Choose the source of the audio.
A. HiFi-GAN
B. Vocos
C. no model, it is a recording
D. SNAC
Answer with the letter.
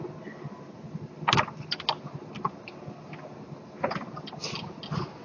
C